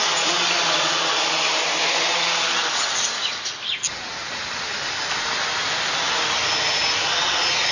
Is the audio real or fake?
real